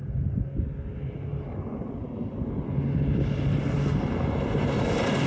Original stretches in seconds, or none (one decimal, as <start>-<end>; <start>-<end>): 0.0-5.3